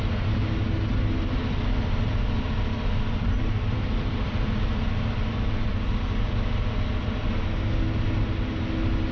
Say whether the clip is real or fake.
real